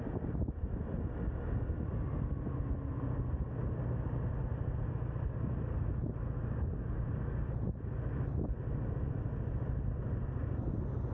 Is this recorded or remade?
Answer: recorded